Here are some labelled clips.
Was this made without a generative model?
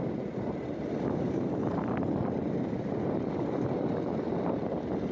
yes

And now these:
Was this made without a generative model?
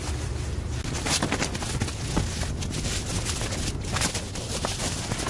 yes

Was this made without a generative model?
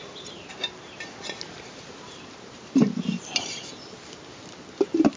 no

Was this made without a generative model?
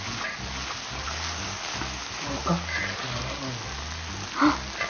yes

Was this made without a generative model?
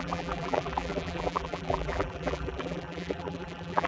no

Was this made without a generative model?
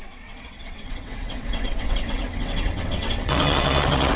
no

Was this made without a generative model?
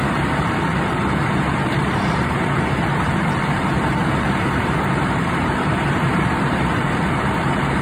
no